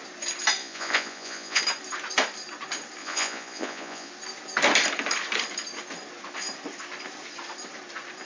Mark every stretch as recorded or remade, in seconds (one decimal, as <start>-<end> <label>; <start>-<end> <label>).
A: 0.0-0.6 recorded; 0.6-1.6 remade; 1.6-3.0 recorded; 3.0-4.1 remade; 4.1-8.3 recorded